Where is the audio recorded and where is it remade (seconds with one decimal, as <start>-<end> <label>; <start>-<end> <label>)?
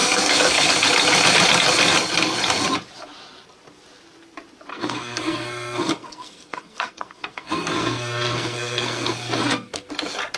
0.0-0.7 remade; 0.7-4.7 recorded; 4.7-9.9 remade; 9.9-10.4 recorded